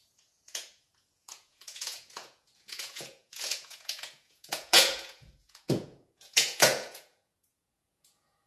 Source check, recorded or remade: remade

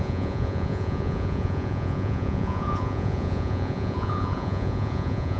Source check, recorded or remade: remade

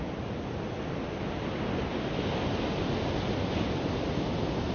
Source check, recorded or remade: recorded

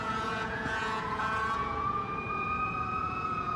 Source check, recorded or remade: remade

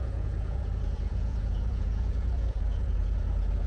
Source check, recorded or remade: remade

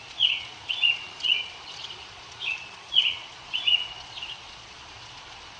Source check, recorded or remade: remade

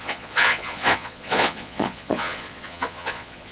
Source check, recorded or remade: remade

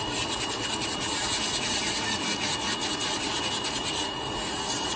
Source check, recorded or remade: remade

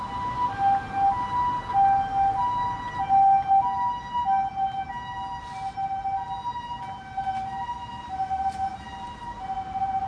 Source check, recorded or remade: recorded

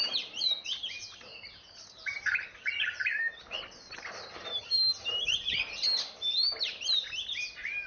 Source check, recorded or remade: recorded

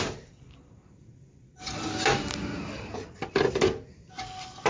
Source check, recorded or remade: recorded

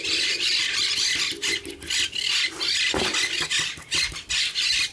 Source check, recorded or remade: recorded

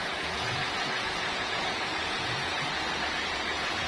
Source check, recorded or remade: remade